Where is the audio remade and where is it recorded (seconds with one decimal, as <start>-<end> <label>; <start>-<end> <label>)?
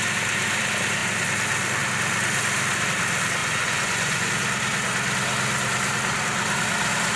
0.0-3.4 recorded; 3.4-4.3 remade; 4.3-7.2 recorded